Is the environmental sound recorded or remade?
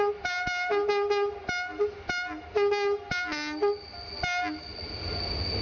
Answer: recorded